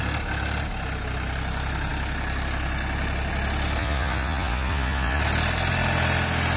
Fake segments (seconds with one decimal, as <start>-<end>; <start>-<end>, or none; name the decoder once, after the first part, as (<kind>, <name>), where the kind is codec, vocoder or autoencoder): 3.8-5.2 (vocoder, Vocos)